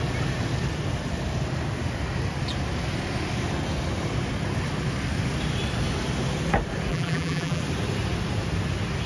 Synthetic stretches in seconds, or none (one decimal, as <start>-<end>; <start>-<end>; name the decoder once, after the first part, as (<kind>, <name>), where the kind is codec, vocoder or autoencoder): 6.9-7.6 (vocoder, BigVGAN v2)

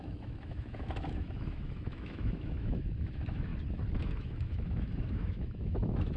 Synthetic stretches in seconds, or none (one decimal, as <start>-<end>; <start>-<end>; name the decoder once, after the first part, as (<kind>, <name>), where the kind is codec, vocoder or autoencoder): 0.0-3.5 (autoencoder, DAC-VAE); 4.0-6.2

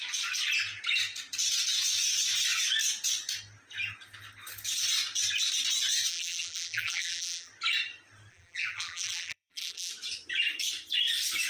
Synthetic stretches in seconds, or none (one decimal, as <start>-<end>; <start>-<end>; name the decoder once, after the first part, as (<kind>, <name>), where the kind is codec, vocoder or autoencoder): 6.1-7.5 (vocoder, BigVGAN v2); 8.3-9.9